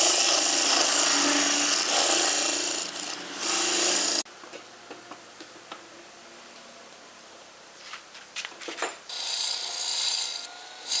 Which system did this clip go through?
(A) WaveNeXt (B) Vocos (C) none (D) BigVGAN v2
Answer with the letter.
C